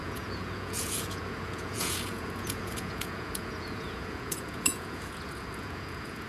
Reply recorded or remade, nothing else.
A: remade